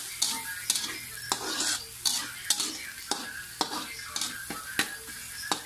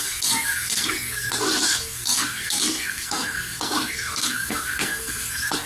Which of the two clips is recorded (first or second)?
first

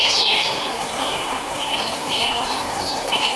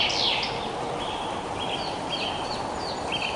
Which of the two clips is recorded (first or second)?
second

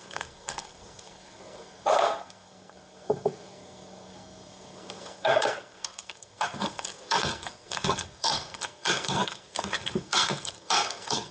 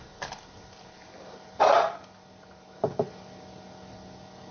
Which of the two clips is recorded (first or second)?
second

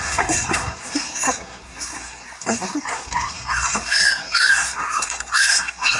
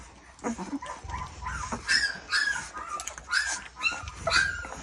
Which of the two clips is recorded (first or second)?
second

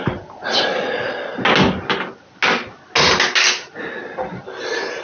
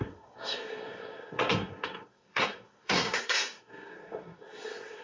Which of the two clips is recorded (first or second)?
first